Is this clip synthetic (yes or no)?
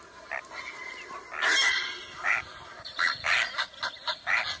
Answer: no